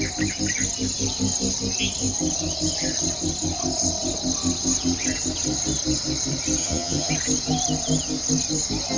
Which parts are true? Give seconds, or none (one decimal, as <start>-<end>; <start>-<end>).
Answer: 0.0-6.6; 7.1-9.0